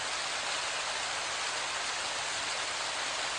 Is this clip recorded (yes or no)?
yes